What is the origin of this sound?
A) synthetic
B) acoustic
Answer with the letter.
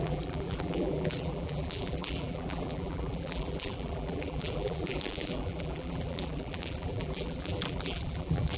A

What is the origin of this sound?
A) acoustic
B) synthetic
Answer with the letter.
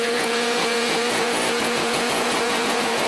B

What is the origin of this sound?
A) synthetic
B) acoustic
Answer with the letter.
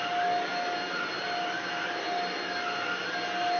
B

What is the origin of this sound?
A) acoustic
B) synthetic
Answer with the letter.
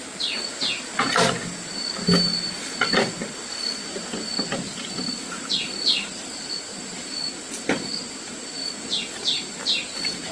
A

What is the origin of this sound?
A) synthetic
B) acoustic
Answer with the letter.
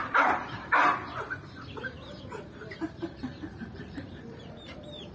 A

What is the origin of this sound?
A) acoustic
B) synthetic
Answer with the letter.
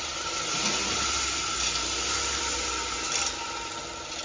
A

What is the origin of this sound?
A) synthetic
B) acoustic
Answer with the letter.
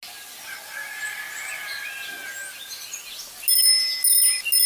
B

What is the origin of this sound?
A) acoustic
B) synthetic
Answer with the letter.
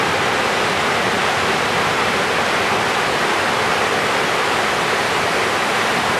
A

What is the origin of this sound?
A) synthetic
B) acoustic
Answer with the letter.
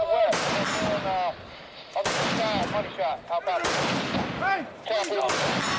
B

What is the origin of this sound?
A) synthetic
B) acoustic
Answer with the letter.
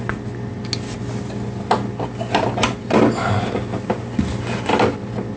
B